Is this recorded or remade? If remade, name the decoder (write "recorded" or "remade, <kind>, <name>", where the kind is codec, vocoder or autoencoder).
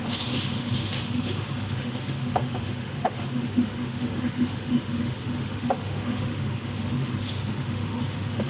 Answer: remade, autoencoder, DAC-VAE